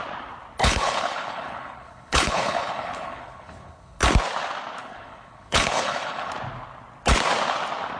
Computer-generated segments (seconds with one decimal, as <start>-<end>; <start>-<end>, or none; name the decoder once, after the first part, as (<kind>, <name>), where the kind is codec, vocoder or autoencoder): 0.6-4.0 (codec, HILCodec); 4.8-6.3